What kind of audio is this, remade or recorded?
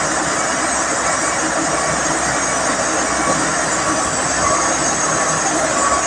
recorded